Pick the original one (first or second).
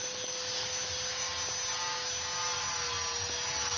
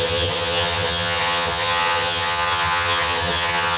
first